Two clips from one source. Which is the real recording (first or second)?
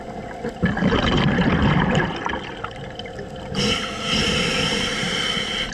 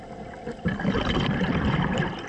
first